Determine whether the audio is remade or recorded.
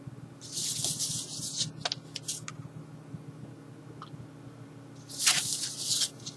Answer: recorded